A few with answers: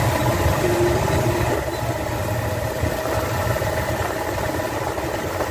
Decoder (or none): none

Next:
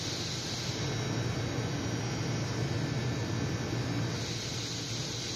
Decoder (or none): none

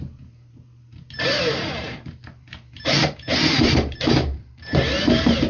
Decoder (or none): vocoder, BigVGAN v2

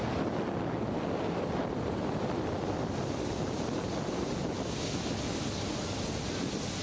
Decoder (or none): none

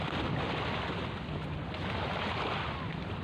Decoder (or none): none